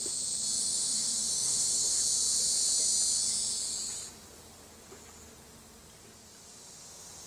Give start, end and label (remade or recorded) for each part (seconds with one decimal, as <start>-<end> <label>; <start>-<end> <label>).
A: 0.0-0.6 recorded; 0.6-2.0 remade; 2.0-7.3 recorded